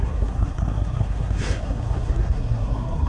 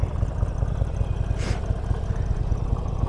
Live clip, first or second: second